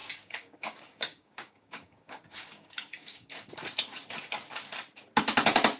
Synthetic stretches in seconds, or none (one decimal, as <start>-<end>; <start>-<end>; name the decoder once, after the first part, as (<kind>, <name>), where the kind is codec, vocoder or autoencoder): 0.0-3.5 (codec, DAC)